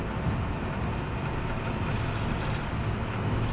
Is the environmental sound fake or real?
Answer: real